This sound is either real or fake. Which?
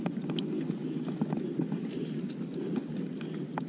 real